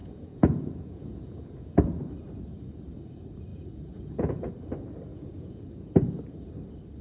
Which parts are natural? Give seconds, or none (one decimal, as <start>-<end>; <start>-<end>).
2.1-3.5; 4.5-5.1; 6.2-7.0